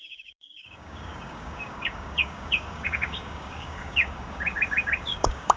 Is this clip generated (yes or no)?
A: yes